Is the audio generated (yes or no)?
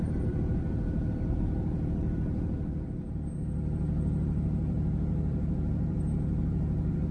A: yes